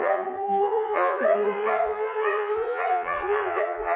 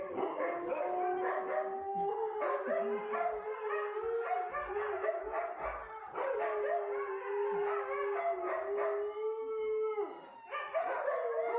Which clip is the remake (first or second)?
first